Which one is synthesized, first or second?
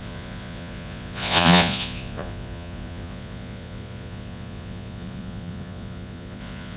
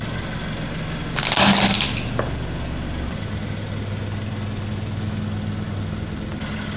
first